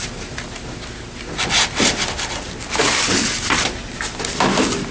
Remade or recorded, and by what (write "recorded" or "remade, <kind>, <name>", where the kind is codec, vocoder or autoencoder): recorded